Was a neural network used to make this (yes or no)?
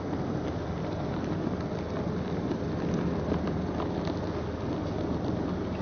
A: no